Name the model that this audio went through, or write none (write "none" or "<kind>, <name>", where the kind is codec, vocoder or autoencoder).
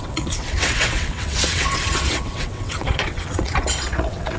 vocoder, WaveNeXt